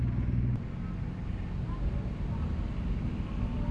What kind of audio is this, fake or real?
real